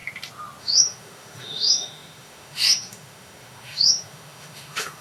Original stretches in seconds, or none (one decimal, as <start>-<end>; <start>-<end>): 0.0-0.6